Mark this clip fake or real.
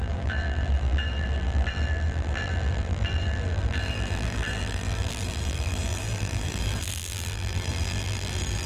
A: fake